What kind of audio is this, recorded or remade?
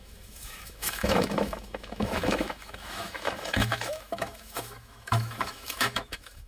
remade